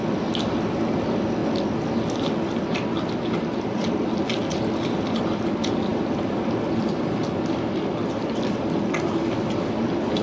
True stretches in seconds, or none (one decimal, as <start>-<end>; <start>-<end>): 0.0-10.2